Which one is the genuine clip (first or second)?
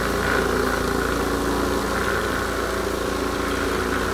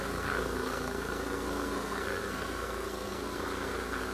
first